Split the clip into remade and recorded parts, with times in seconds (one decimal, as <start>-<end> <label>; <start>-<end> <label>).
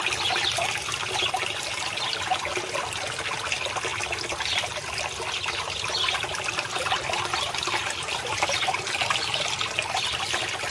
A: 0.0-10.7 recorded